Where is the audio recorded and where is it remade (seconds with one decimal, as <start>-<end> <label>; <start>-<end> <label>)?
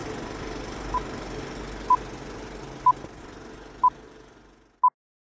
0.0-5.3 recorded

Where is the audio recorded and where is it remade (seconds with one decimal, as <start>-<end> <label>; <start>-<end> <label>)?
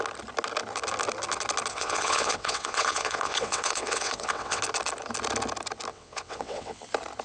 0.0-1.7 recorded; 1.7-4.6 remade; 4.6-5.9 recorded; 5.9-6.8 remade; 6.8-7.2 recorded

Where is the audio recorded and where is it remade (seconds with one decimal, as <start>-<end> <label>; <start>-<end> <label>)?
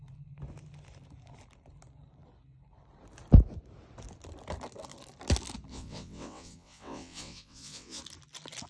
0.0-5.7 recorded; 5.7-8.0 remade; 8.0-8.7 recorded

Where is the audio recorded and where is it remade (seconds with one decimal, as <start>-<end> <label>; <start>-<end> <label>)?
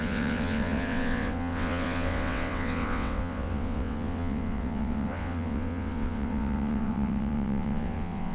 0.0-8.3 remade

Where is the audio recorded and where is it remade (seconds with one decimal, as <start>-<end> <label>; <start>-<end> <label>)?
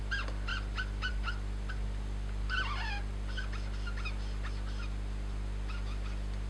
0.0-6.5 recorded